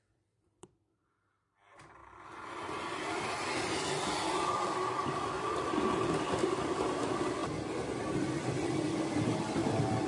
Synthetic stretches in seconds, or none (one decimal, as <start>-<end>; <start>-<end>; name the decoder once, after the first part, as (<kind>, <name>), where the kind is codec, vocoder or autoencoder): 0.0-2.0 (vocoder, BigVGAN v2); 4.1-7.4; 9.0-9.6